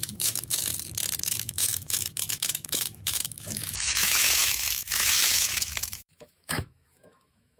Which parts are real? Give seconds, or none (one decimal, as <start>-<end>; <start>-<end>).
0.7-1.2